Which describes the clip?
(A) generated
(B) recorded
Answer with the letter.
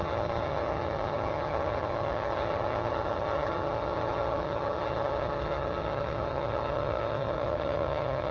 A